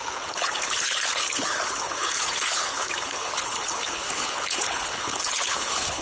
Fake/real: fake